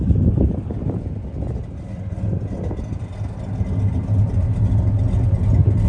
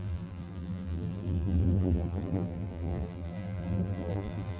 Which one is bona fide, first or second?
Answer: first